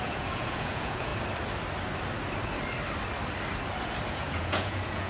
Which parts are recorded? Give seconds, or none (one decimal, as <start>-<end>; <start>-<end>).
1.1-4.1